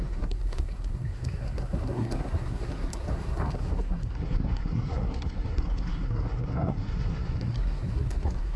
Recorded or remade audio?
remade